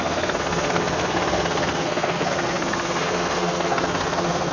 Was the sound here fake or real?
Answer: fake